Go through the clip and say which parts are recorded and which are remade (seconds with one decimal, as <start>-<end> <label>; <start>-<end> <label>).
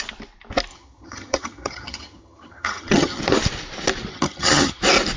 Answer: 0.0-0.7 recorded; 0.7-3.2 remade; 3.2-4.1 recorded; 4.1-4.8 remade; 4.8-5.2 recorded